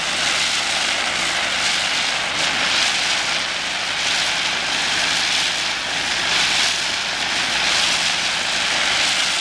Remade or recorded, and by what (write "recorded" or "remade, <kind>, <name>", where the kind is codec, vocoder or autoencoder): recorded